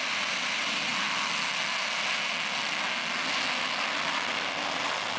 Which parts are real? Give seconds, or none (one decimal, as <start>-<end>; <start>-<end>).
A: 0.0-5.2